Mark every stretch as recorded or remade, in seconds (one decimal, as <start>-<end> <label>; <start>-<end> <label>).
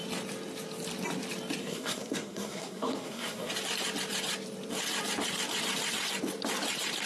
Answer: 0.0-1.6 recorded; 1.6-3.5 remade; 3.5-7.1 recorded